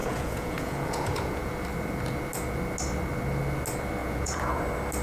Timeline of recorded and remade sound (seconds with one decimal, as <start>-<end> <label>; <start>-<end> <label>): 0.0-1.5 remade; 1.5-4.0 recorded; 4.0-4.6 remade; 4.6-5.0 recorded